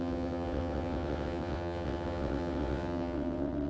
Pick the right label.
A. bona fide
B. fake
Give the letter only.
B